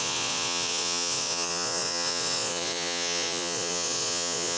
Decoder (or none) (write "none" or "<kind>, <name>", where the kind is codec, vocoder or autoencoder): vocoder, Vocos